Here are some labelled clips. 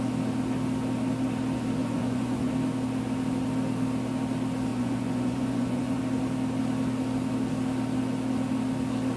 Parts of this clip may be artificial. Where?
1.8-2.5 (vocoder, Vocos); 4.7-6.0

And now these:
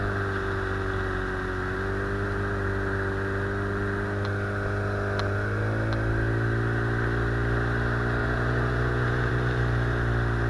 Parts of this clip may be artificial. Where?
8.2-9.3 (vocoder, Vocos)

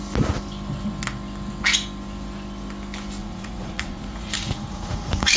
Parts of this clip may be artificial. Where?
3.2-5.4 (vocoder, Vocos)

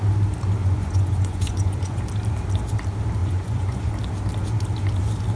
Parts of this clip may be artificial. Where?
0.6-2.0 (vocoder, Vocos); 3.2-3.9

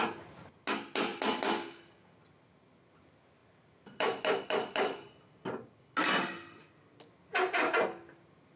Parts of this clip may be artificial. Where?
none

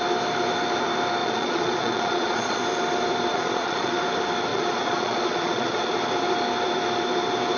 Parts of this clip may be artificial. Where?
1.2-2.6 (vocoder, Vocos); 3.3-4.0; 4.5-5.9

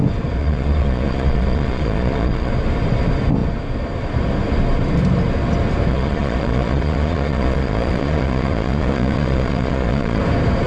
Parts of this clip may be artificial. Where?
0.4-2.5 (vocoder, Vocos); 5.9-10.2

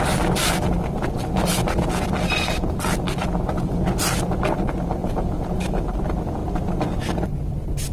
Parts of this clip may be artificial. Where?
1.5-2.1 (vocoder, Vocos); 5.0-5.8